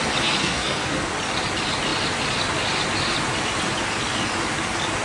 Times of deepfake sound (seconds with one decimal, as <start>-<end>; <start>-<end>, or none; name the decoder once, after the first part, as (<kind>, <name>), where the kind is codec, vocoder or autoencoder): 0.4-1.1 (codec, SNAC)